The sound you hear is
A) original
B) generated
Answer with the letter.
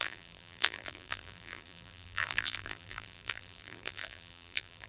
B